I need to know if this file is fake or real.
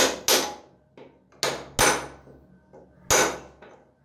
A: real